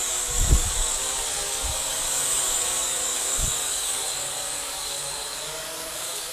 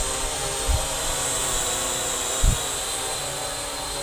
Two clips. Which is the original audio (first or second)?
second